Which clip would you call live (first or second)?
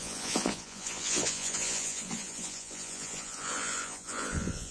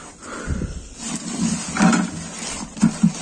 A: second